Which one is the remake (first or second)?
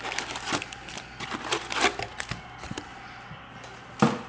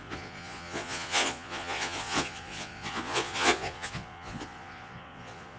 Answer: second